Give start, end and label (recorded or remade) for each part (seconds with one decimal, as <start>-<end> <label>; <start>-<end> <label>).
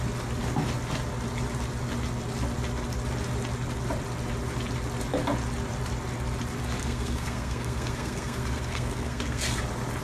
0.0-6.8 recorded; 6.8-9.6 remade; 9.6-10.0 recorded